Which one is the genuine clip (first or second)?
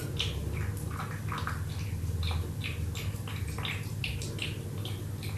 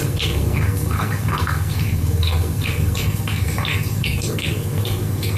first